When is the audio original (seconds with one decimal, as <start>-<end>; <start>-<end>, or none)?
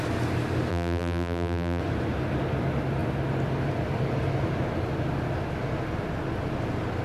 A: 0.0-0.7; 1.8-7.0